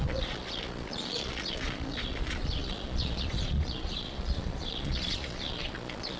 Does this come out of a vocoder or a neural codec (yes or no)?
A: yes